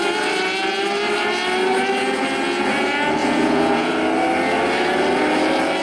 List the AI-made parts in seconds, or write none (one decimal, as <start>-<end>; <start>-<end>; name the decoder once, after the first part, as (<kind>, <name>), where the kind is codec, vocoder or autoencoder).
3.2-3.9 (vocoder, Vocos)